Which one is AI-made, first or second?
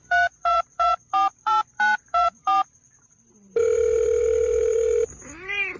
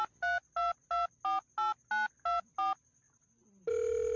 first